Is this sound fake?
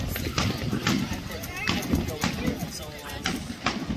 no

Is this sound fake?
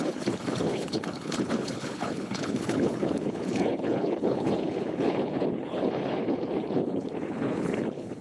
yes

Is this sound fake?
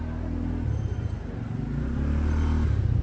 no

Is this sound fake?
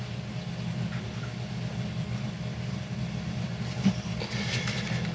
no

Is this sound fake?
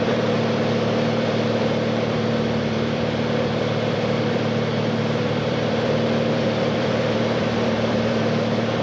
yes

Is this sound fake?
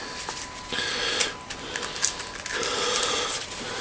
no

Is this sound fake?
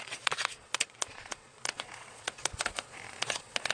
yes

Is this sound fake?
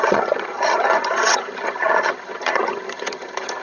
yes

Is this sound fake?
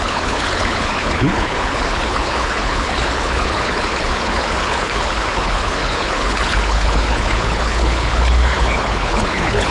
yes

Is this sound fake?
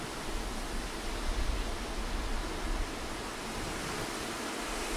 no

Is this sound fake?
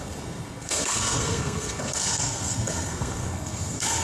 yes